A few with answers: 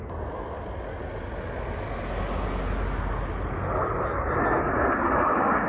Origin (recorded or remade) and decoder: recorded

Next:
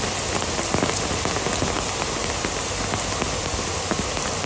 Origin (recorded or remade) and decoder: recorded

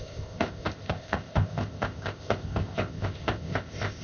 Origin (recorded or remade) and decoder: remade, codec, ZipCodec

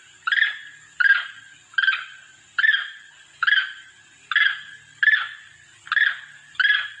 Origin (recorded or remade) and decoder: recorded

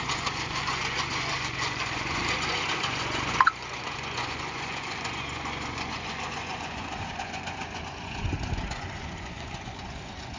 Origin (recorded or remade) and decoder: remade, vocoder, Vocos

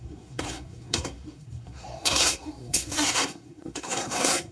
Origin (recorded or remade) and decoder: remade, codec, SNAC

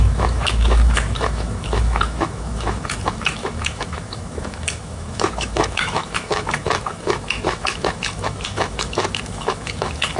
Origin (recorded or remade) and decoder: remade, autoencoder, DAC-VAE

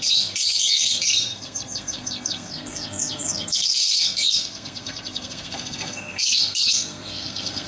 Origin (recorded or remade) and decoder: remade, codec, SNAC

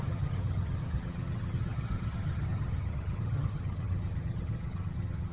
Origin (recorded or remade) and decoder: remade, vocoder, HiFi-GAN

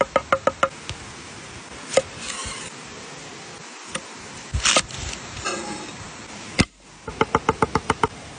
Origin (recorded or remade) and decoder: recorded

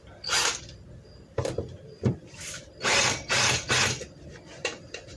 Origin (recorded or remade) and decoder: remade, vocoder, BigVGAN v2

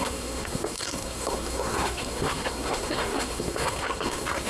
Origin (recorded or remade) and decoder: remade, codec, SNAC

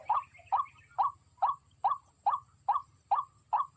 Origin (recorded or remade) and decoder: recorded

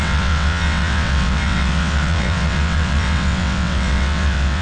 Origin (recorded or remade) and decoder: remade, vocoder, WaveNeXt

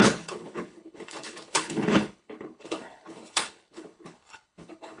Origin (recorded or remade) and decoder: remade, codec, HILCodec